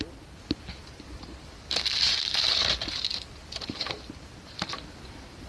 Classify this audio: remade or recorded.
recorded